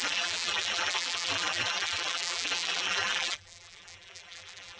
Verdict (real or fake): fake